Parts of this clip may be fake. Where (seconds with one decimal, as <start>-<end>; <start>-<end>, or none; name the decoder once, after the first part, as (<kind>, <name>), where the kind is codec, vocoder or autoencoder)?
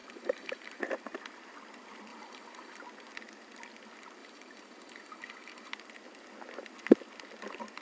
0.0-0.8 (vocoder, BigVGAN v2); 2.1-2.8; 4.2-5.7